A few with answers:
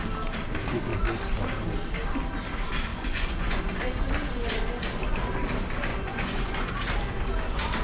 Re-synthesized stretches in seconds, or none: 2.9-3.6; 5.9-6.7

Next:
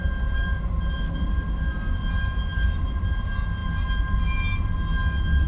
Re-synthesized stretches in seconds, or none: none

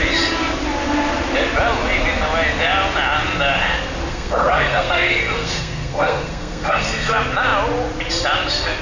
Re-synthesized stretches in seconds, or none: 4.1-7.1

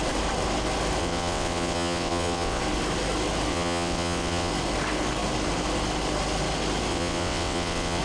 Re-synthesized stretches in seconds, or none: 1.0-2.6; 3.5-4.5; 6.9-8.0